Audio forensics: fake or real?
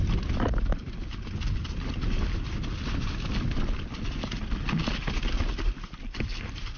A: real